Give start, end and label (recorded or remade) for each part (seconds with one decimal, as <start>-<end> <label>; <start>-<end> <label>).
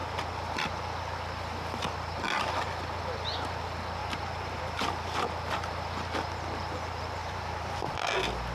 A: 0.0-4.0 recorded; 4.0-4.6 remade; 4.6-7.2 recorded; 7.2-7.8 remade; 7.8-8.5 recorded